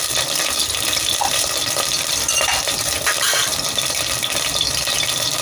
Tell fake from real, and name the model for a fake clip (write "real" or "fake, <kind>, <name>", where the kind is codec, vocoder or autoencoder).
fake, vocoder, BigVGAN v2